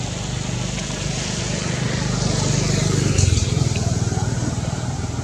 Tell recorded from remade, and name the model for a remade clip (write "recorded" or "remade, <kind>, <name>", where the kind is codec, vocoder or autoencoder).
recorded